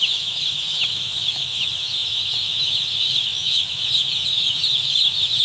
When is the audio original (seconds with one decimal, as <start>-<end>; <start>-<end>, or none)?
none